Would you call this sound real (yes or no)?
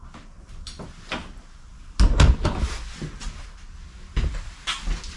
yes